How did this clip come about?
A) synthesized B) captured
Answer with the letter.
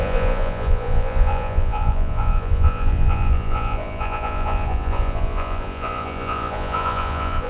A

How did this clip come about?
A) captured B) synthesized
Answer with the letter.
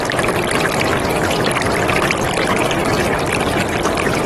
A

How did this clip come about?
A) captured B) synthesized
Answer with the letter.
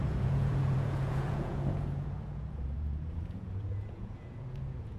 B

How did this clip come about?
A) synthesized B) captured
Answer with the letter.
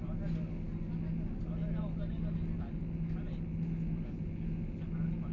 B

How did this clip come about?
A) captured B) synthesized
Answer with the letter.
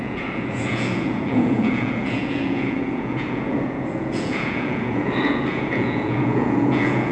B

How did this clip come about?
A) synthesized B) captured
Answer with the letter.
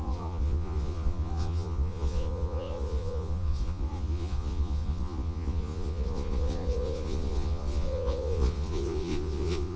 A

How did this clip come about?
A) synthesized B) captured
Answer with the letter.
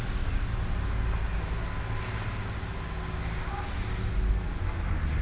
B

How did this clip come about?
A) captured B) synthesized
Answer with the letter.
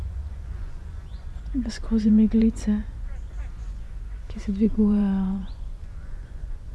B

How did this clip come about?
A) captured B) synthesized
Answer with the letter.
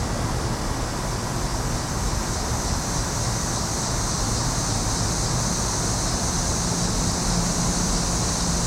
A